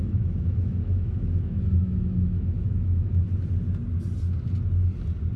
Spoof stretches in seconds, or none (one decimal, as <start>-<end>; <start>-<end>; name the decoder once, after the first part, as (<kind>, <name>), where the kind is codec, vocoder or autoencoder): 0.0-3.2 (autoencoder, DAC-VAE)